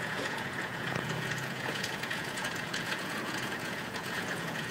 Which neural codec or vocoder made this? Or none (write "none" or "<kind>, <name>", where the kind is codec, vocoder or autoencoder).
vocoder, Vocos